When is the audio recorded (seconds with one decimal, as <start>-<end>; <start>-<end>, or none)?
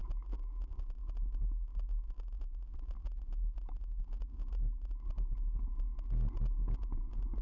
0.0-7.4